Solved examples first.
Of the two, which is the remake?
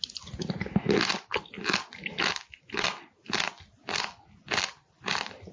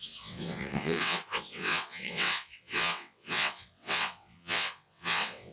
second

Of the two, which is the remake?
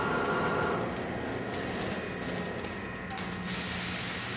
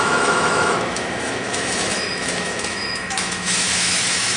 second